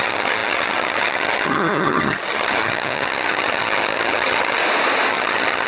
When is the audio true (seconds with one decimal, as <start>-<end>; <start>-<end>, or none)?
4.6-5.1